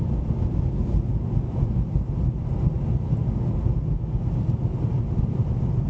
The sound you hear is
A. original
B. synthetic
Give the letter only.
A